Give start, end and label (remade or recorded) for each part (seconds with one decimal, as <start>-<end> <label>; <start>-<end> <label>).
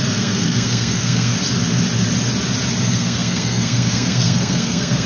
0.0-1.3 remade; 1.3-2.8 recorded; 2.8-5.1 remade